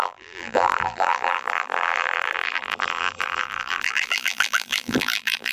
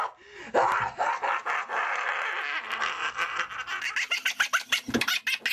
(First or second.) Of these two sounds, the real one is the second